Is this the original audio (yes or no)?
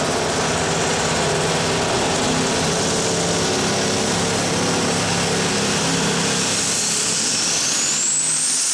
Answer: yes